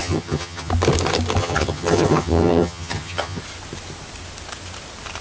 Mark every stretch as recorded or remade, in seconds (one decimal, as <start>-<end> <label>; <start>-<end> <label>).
0.0-0.7 remade; 0.7-1.4 recorded; 1.4-3.4 remade; 3.4-5.2 recorded